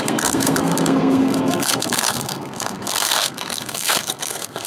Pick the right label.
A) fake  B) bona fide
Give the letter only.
A